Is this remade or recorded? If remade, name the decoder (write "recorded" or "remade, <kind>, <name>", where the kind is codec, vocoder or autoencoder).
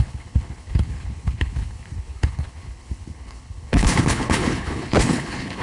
remade, codec, HILCodec